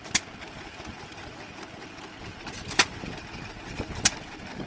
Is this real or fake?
real